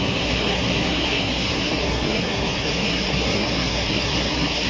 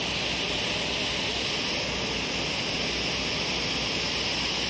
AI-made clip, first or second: first